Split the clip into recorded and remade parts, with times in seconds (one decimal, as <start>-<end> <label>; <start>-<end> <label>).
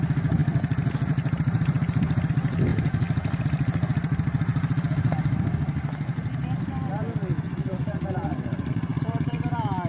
0.0-7.3 recorded; 7.3-8.7 remade; 8.7-9.9 recorded